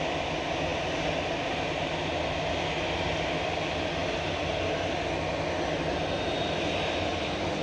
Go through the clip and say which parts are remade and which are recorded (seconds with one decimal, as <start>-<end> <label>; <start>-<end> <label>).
0.0-4.0 recorded; 4.0-4.7 remade; 4.7-7.6 recorded